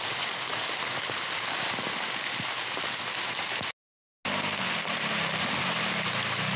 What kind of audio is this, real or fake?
real